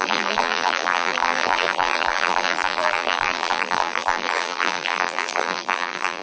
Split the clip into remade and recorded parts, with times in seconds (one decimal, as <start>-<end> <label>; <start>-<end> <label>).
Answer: 0.0-6.2 remade